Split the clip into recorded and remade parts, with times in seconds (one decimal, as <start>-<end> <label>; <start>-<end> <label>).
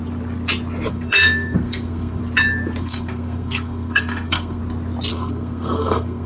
0.0-0.9 recorded; 0.9-2.2 remade; 2.2-2.8 recorded; 2.8-4.6 remade; 4.6-5.1 recorded; 5.1-6.3 remade